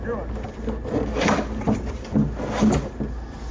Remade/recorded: recorded